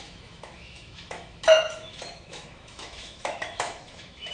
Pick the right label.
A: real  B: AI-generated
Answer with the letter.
B